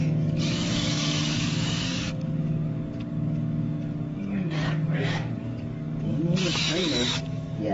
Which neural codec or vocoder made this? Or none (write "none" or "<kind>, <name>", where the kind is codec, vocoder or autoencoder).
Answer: codec, DAC